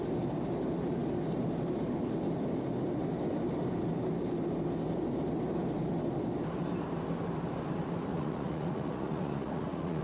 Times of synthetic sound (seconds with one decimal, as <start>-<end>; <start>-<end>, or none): 8.1-10.0